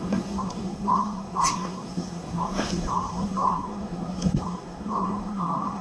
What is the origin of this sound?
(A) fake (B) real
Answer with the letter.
A